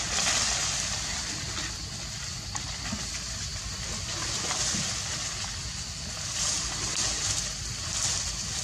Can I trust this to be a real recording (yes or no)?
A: yes